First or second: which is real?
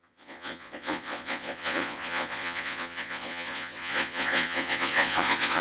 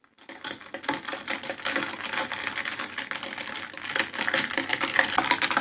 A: second